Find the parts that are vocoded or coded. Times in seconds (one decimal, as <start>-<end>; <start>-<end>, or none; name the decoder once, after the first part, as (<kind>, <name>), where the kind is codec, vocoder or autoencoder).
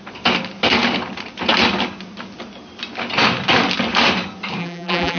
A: 4.6-5.2 (vocoder, BigVGAN v2)